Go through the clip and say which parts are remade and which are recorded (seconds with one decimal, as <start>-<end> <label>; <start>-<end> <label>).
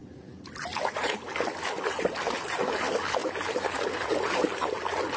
0.0-5.2 recorded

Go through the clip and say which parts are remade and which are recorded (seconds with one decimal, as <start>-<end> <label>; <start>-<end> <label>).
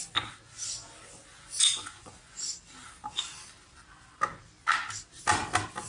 0.0-1.6 recorded; 1.6-2.4 remade; 2.4-5.9 recorded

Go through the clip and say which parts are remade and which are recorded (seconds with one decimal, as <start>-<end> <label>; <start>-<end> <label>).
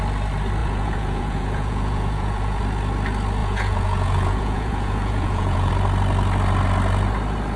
0.0-0.6 recorded; 0.6-2.6 remade; 2.6-3.4 recorded; 3.4-5.7 remade; 5.7-7.6 recorded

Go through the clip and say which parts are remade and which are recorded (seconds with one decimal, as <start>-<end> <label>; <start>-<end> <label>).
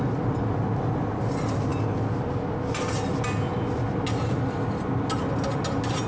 0.0-6.1 recorded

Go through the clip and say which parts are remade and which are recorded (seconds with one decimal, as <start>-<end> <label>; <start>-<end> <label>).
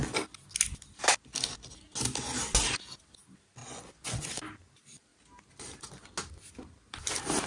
0.0-3.6 recorded; 3.6-4.4 remade; 4.4-7.5 recorded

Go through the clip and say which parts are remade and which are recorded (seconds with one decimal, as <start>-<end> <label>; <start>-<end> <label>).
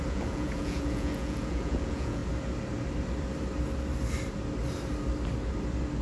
0.0-2.2 remade; 2.2-6.0 recorded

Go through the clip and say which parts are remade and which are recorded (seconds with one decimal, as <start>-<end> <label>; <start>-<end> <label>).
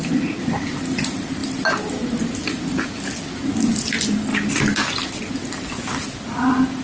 0.0-6.8 recorded